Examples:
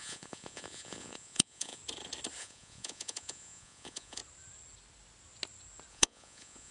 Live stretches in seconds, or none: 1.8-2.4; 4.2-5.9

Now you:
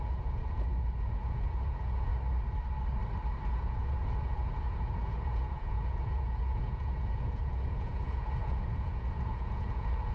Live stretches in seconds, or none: 2.1-3.5

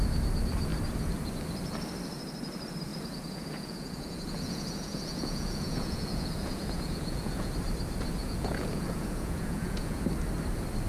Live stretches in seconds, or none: 0.0-2.9; 7.5-8.2; 10.0-10.9

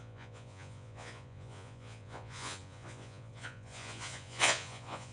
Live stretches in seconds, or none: none

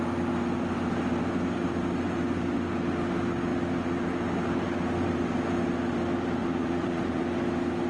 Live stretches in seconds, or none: 0.0-6.4; 7.2-7.9

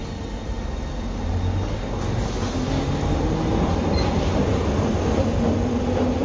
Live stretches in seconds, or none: 0.0-6.2

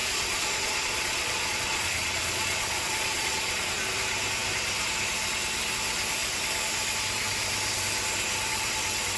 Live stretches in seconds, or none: 3.8-9.2

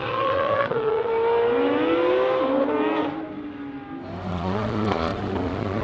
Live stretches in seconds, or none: 1.1-4.3